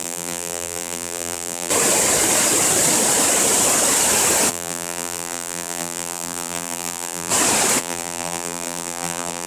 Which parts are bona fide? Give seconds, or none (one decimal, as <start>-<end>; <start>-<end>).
1.7-4.5; 7.3-7.8